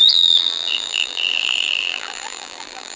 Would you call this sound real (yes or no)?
no